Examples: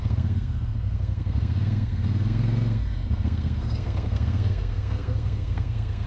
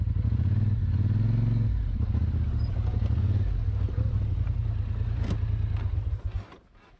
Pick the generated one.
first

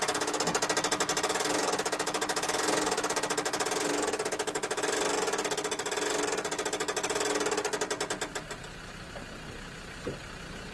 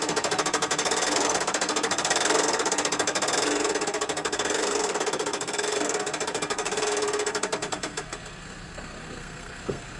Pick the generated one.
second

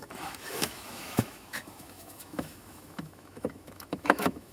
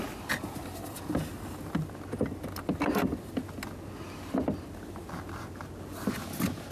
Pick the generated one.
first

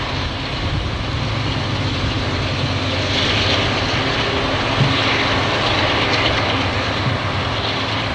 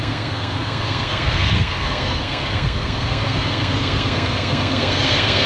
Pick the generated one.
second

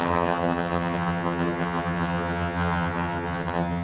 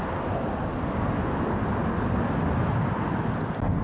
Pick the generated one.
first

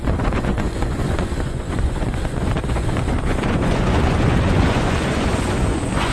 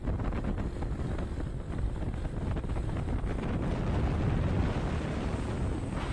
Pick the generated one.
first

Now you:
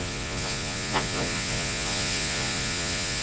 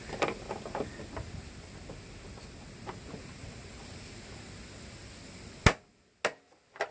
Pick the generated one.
first